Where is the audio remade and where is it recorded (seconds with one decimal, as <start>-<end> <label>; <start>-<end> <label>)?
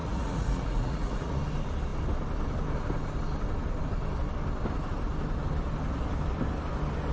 0.0-1.4 remade; 1.4-7.1 recorded